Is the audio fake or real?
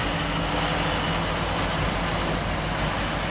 real